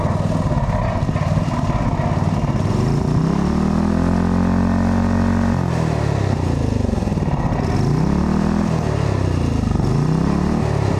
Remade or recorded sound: recorded